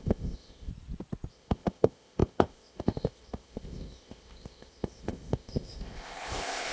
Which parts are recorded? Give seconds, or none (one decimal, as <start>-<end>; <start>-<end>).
0.7-1.3